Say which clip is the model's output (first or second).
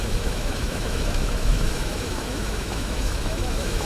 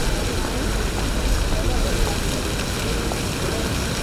first